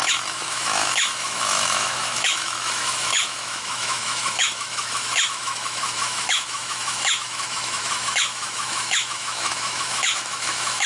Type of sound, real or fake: fake